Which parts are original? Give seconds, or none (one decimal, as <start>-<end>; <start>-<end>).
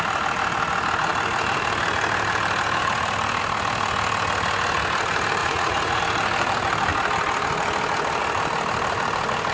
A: 0.0-5.4; 6.0-9.5